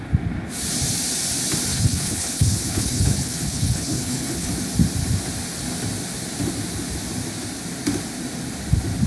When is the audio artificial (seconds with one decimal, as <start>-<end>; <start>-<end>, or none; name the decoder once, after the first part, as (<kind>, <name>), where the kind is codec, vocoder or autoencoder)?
1.7-4.5 (codec, HILCodec)